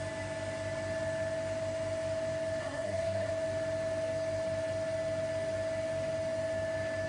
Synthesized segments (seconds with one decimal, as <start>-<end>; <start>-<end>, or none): 2.6-3.3